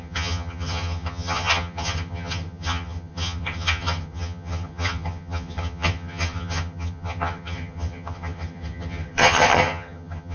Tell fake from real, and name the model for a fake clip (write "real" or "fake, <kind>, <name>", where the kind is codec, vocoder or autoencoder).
fake, vocoder, HiFi-GAN